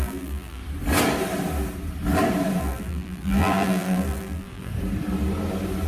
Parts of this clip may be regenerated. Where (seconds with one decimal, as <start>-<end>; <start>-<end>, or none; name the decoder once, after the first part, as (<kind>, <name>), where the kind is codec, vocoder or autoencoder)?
0.0-0.6 (vocoder, BigVGAN v2); 2.6-4.7